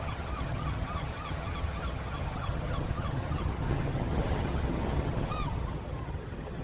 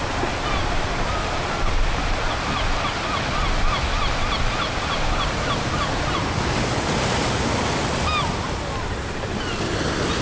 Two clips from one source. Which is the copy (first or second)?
first